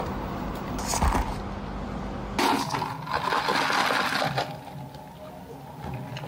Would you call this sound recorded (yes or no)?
yes